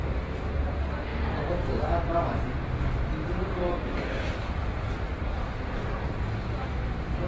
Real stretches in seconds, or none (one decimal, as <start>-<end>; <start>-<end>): 0.0-7.3

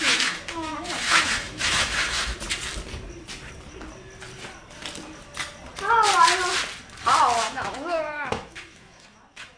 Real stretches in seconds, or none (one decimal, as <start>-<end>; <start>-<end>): 2.3-7.4

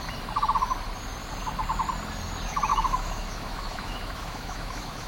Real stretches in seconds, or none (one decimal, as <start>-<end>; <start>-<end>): 0.0-2.7

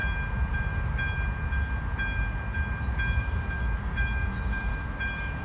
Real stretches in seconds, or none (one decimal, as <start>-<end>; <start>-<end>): 0.0-3.2; 4.7-5.4